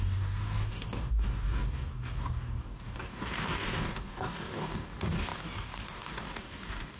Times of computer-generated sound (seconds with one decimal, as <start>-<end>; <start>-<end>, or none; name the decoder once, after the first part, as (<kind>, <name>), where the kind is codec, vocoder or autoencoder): 0.0-7.0 (codec, DAC)